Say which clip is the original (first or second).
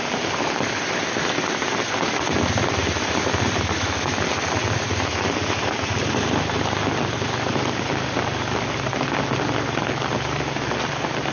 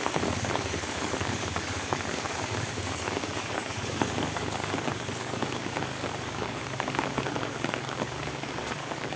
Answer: first